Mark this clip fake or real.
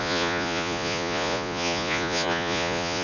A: fake